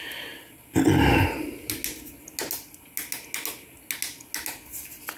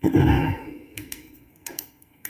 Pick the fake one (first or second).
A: second